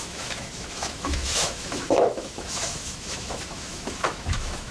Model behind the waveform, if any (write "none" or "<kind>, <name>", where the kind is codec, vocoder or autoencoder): autoencoder, DAC-VAE